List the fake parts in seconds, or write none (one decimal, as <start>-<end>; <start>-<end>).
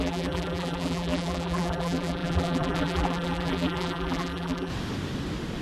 0.0-4.7